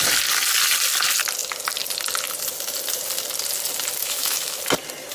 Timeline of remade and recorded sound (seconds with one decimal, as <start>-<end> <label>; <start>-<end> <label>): 0.0-4.0 recorded; 4.0-4.6 remade; 4.6-5.1 recorded